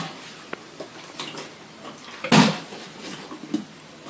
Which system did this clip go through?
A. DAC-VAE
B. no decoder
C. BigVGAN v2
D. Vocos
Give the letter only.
B